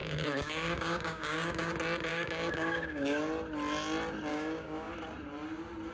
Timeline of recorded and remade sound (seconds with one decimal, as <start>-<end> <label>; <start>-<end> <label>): 0.0-1.7 remade; 1.7-2.1 recorded; 2.1-3.2 remade; 3.2-4.3 recorded; 4.3-4.9 remade; 4.9-5.9 recorded